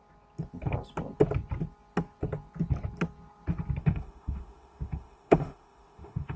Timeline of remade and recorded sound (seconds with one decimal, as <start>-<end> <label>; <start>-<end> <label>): 0.0-3.8 recorded; 3.8-6.4 remade